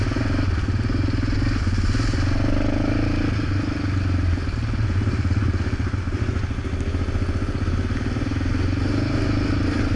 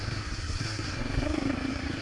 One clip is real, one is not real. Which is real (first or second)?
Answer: first